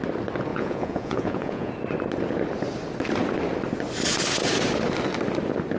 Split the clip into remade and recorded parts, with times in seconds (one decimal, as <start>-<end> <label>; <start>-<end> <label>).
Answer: 0.0-0.5 recorded; 0.5-1.7 remade; 1.7-5.8 recorded